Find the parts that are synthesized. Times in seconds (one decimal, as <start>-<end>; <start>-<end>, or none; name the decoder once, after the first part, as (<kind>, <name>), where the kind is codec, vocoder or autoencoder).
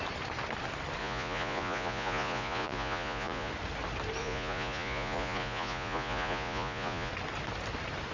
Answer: 1.0-3.5 (vocoder, Vocos); 4.2-7.1